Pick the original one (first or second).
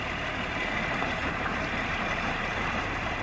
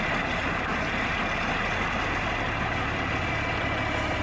second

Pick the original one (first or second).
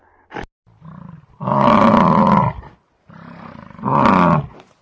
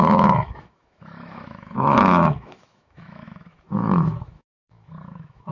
first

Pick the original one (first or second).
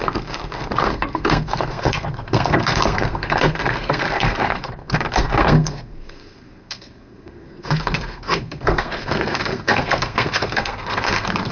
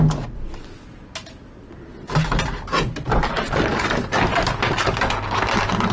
second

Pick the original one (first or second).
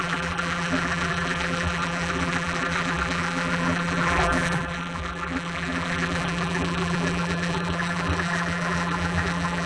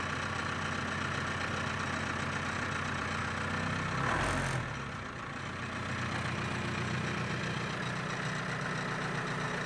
second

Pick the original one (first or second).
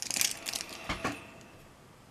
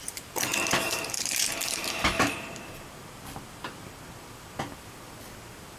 first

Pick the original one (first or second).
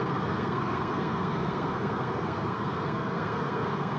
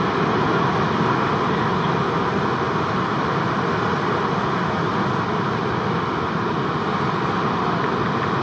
second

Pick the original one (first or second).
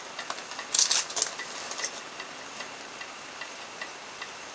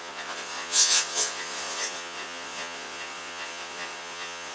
first